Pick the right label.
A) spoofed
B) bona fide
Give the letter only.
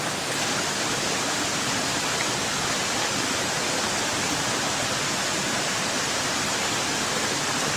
B